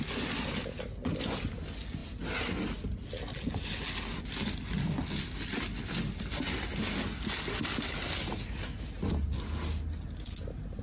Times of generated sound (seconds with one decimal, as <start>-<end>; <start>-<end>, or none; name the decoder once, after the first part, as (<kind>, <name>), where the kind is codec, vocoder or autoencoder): none